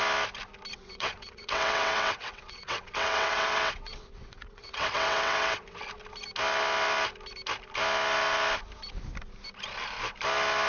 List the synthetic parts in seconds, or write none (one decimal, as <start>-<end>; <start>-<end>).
0.7-5.8